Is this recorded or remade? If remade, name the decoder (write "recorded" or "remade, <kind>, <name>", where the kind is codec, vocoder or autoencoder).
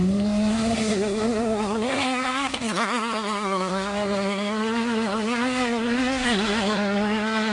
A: remade, codec, SNAC